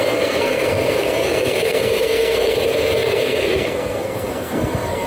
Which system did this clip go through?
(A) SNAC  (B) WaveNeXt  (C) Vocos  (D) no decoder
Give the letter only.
A